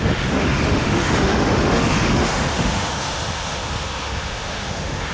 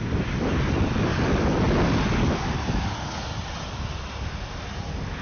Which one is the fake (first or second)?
first